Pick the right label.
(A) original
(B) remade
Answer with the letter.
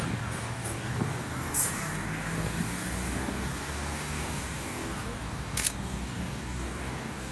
B